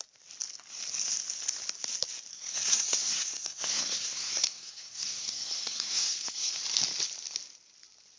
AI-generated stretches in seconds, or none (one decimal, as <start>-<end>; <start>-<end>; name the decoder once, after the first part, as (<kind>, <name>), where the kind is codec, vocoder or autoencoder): 2.3-6.5 (codec, SNAC)